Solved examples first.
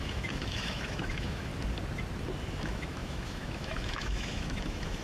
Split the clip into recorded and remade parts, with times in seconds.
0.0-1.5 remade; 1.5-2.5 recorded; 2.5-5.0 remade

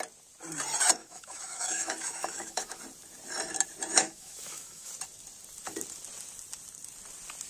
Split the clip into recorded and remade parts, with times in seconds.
0.0-1.0 recorded; 1.0-2.8 remade; 2.8-3.9 recorded; 3.9-4.9 remade; 4.9-7.5 recorded

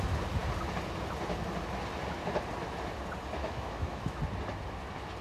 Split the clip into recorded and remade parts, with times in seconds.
0.0-3.4 recorded; 3.4-4.2 remade; 4.2-5.2 recorded

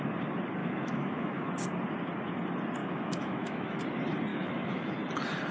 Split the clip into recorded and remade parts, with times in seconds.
0.0-0.6 recorded; 0.6-1.5 remade; 1.5-2.8 recorded; 2.8-3.8 remade; 3.8-4.3 recorded; 4.3-4.9 remade; 4.9-5.5 recorded

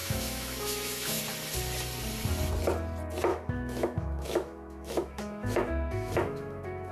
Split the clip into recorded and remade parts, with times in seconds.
0.0-1.2 remade; 1.2-3.3 recorded; 3.3-6.9 remade